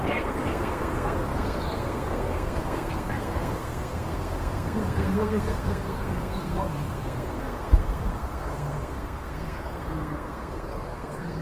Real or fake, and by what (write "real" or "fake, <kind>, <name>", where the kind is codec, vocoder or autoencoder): fake, codec, SNAC